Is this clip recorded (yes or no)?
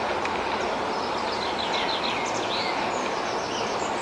yes